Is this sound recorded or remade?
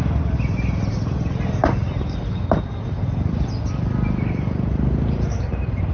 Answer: recorded